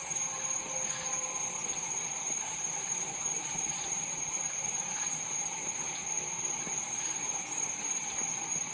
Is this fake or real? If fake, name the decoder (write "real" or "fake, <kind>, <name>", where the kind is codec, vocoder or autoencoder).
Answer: real